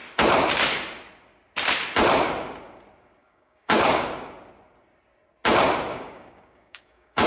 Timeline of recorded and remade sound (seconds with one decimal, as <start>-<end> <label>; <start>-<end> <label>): 0.0-3.2 recorded; 3.2-4.1 remade; 4.1-5.9 recorded; 5.9-7.3 remade